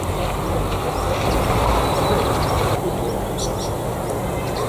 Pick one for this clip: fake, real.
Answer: real